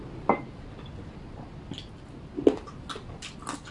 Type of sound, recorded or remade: recorded